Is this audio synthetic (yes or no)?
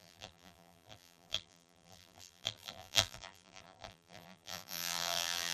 yes